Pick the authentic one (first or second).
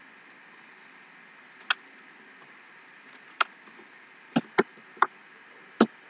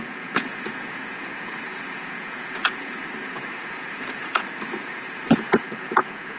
first